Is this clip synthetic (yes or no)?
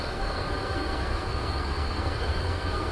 yes